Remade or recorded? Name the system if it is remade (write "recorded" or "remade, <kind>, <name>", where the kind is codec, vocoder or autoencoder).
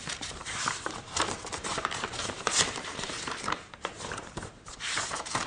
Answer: remade, vocoder, BigVGAN v2